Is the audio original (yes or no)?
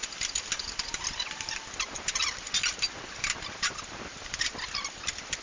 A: yes